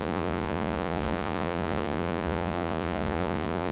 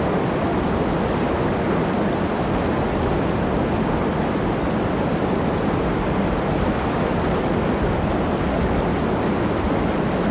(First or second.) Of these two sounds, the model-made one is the first